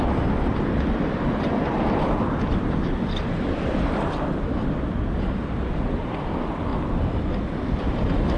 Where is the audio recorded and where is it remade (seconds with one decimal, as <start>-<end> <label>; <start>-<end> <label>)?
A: 0.0-6.7 remade; 6.7-7.8 recorded; 7.8-8.4 remade